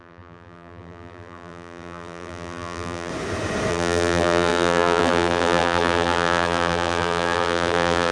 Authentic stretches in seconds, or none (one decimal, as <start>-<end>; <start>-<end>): 3.1-3.7